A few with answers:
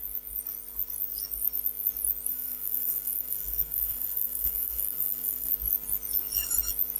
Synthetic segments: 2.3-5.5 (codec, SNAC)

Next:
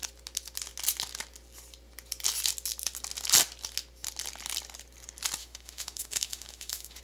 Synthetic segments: 5.4-7.0 (autoencoder, DAC-VAE)

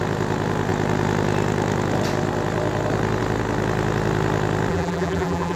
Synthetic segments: 4.7-5.6 (vocoder, BigVGAN v2)

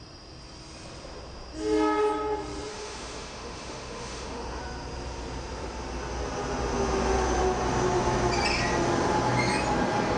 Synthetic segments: 2.7-4.6 (autoencoder, DAC-VAE)

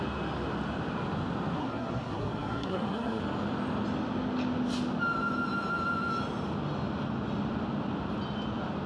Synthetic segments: 1.6-3.2 (codec, SNAC)